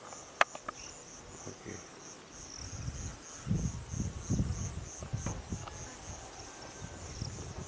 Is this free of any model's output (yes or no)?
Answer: yes